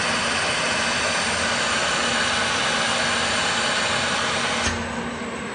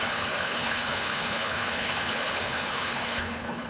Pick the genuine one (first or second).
first